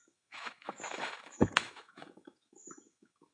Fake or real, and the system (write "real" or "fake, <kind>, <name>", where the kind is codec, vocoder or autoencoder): fake, autoencoder, DAC-VAE